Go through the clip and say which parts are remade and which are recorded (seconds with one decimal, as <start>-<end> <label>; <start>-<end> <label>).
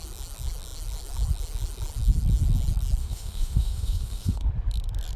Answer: 0.0-3.0 recorded; 3.0-4.5 remade; 4.5-5.2 recorded